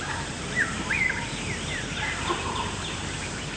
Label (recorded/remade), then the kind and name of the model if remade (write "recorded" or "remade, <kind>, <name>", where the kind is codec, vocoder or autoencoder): remade, vocoder, BigVGAN v2